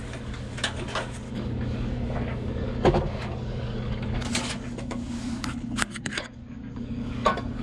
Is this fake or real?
fake